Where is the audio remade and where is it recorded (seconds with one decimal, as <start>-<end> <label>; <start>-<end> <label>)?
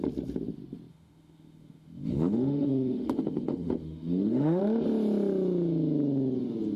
0.0-0.9 recorded; 0.9-4.6 remade; 4.6-6.8 recorded